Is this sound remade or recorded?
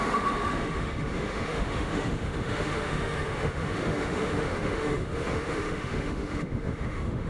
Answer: remade